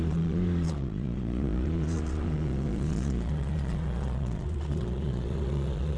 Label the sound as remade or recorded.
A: remade